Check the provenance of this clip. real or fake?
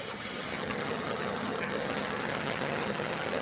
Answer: fake